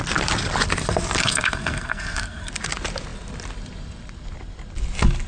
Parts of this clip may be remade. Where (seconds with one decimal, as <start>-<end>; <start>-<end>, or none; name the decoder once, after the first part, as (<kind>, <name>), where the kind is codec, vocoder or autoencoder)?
1.2-2.5 (codec, SNAC)